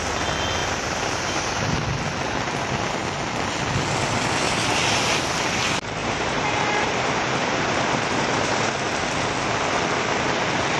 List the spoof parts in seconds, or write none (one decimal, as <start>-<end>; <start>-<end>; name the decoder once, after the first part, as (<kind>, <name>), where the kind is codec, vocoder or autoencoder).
0.6-1.6 (vocoder, BigVGAN v2); 6.0-8.7